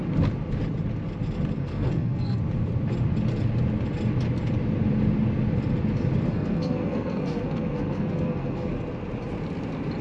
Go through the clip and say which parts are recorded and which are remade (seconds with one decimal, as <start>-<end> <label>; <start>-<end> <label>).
0.0-1.6 recorded; 1.6-2.4 remade; 2.4-6.3 recorded; 6.3-8.7 remade; 8.7-10.0 recorded